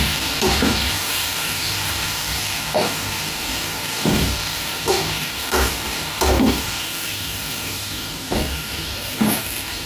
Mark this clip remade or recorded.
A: remade